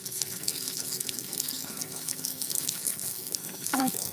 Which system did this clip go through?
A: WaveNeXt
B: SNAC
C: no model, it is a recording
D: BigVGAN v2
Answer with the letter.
B